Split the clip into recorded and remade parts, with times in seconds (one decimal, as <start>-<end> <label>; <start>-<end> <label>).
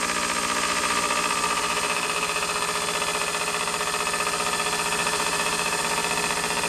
0.0-5.0 recorded; 5.0-5.8 remade; 5.8-6.7 recorded